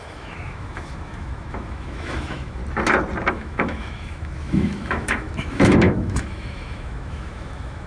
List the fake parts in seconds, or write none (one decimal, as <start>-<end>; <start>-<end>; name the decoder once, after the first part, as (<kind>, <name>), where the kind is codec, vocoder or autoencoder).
0.0-2.6 (autoencoder, DAC-VAE); 3.3-7.9